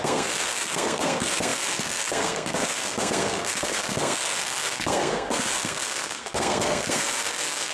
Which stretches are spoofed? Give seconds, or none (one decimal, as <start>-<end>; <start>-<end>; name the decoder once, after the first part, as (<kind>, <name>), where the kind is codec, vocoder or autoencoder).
0.0-7.7 (codec, SNAC)